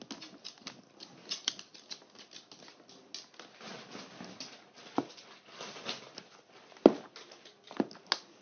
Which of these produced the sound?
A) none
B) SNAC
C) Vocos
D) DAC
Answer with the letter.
A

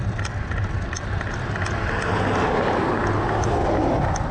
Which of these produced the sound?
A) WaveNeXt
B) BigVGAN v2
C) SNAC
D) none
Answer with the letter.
D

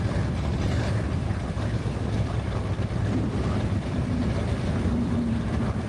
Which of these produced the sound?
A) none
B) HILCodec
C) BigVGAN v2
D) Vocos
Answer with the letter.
C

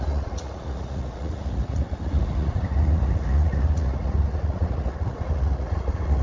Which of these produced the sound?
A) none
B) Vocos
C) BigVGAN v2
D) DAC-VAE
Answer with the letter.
B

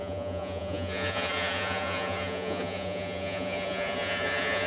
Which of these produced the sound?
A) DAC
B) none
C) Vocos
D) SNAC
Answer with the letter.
C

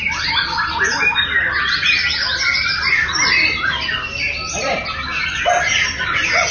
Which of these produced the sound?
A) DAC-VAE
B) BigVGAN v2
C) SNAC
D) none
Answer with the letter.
D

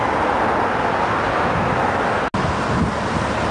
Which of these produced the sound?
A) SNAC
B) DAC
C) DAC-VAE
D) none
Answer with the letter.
D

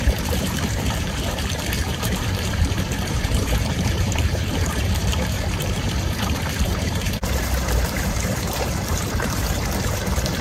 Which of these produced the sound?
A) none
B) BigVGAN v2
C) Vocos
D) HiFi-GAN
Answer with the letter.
B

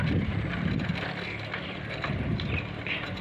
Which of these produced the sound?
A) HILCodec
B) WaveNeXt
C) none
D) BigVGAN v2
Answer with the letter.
C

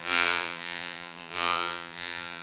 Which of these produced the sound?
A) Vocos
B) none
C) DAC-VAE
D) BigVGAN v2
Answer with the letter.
D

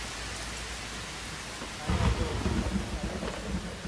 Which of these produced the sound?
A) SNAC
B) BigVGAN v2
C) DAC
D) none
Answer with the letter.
D